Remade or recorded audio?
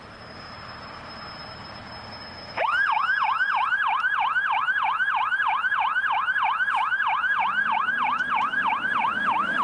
remade